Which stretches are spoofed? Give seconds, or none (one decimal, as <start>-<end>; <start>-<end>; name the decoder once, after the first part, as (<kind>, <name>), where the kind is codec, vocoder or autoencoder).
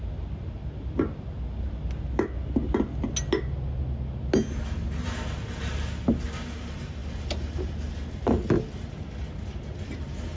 none